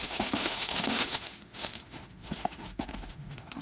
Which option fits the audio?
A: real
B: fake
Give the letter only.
B